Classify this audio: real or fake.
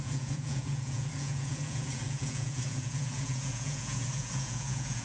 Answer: fake